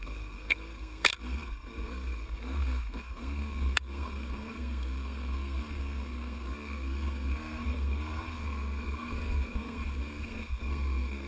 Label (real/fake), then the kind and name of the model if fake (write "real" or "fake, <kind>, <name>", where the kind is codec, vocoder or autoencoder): fake, codec, SNAC